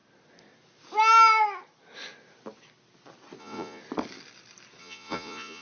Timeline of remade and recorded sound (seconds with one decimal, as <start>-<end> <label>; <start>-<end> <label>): 0.0-3.4 recorded; 3.4-3.8 remade; 3.8-4.8 recorded; 4.8-5.6 remade